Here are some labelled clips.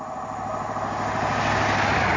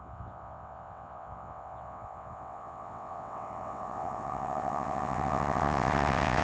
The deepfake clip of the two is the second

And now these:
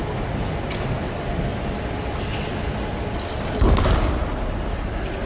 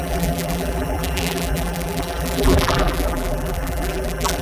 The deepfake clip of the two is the second